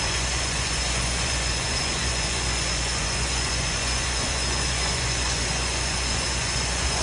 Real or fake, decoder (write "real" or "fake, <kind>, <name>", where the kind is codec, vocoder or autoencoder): fake, vocoder, Vocos